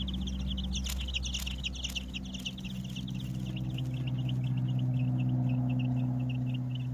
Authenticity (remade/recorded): recorded